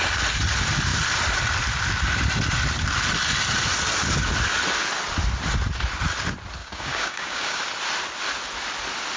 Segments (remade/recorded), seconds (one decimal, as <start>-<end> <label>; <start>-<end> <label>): 0.0-6.6 recorded; 6.6-7.6 remade; 7.6-9.2 recorded